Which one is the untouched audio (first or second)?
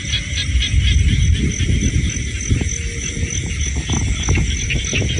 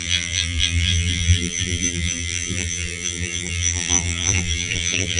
first